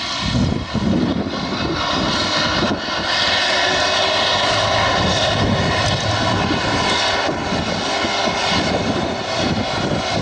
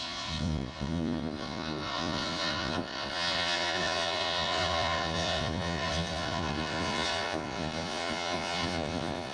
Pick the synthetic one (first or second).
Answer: second